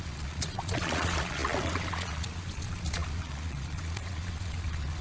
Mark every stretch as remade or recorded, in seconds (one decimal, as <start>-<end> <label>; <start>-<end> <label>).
0.0-5.0 remade